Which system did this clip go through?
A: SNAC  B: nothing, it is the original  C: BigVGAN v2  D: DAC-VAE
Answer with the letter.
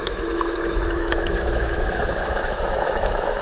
D